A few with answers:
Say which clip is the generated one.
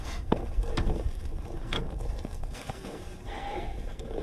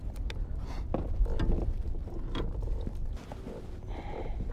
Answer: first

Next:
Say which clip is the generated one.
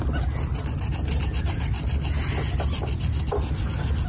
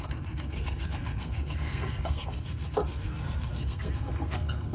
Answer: second